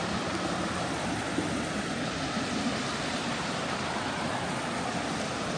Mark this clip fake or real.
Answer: real